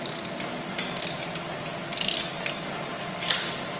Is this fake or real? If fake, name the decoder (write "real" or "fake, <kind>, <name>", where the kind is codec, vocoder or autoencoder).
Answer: real